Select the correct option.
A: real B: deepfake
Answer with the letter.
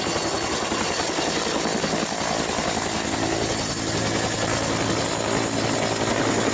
A